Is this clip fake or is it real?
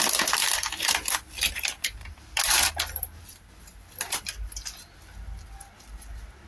real